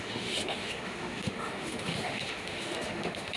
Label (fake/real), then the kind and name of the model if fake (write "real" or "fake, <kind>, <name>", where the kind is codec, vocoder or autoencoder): fake, autoencoder, DAC-VAE